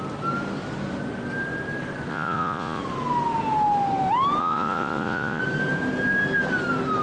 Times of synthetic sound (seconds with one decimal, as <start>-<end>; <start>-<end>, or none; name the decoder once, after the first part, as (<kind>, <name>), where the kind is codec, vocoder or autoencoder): 2.1-2.8 (vocoder, Vocos); 4.4-5.4